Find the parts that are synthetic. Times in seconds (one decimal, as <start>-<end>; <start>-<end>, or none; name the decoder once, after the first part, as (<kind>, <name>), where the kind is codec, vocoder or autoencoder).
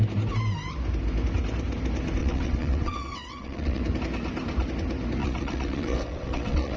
2.2-3.8 (vocoder, WaveNeXt); 5.2-6.8